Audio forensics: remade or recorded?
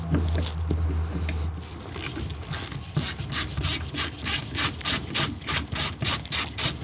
recorded